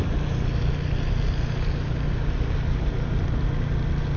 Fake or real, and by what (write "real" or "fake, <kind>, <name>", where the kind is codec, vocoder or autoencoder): real